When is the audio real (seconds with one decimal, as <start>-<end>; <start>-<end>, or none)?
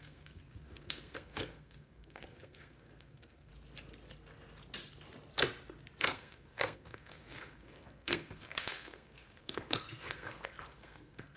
3.5-6.0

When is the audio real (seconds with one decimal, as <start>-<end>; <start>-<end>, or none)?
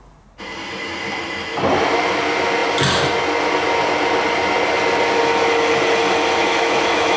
0.0-6.4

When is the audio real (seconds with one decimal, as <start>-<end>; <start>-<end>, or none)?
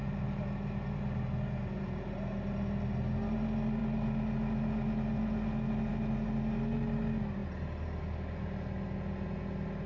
0.0-9.9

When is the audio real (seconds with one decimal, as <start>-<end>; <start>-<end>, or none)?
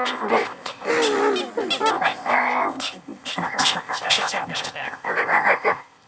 0.9-1.9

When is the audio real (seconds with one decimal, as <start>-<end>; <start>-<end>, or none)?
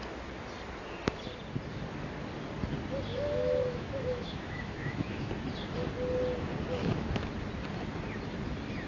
0.0-3.1; 5.3-6.8; 7.3-8.9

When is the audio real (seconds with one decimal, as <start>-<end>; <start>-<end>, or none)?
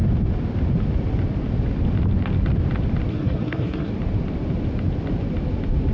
0.0-3.1; 3.9-5.9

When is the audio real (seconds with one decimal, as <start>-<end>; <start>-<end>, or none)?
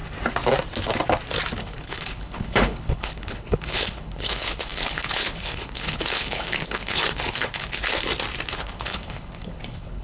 0.0-1.6; 7.9-8.5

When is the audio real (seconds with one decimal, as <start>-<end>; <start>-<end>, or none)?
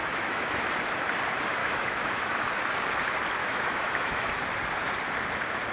0.6-1.6; 2.4-3.4; 4.3-5.7